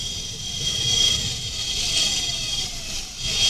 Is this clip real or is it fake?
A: real